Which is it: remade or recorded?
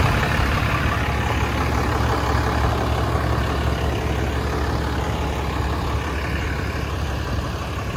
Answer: recorded